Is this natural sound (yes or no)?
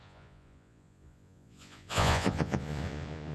no